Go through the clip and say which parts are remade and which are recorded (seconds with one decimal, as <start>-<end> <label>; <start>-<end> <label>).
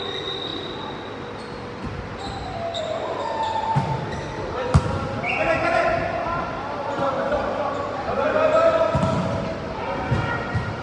0.0-10.8 recorded